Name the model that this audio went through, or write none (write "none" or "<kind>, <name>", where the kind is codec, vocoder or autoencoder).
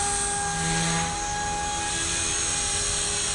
none